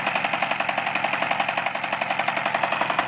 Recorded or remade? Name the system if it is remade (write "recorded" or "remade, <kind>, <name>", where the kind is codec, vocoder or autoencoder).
recorded